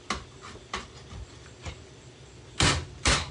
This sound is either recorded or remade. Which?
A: remade